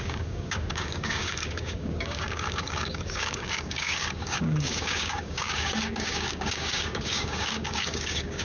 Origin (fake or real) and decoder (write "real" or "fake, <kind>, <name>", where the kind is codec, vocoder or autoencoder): fake, codec, DAC